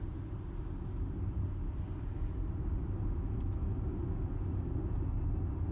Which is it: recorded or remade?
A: recorded